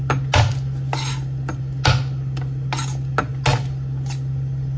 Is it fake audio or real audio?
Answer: real